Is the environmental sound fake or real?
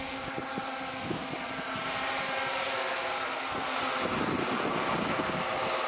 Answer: real